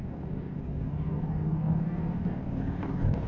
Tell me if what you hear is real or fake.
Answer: fake